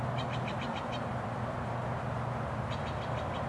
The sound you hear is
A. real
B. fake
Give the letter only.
A